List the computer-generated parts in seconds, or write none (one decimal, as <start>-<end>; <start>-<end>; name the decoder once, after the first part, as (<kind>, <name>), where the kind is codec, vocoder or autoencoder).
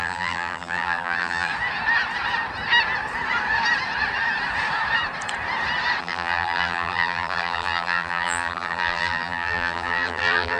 0.0-1.5 (vocoder, BigVGAN v2); 6.0-10.6